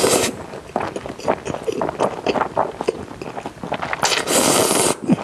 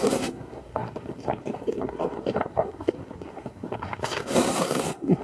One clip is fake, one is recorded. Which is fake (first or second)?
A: second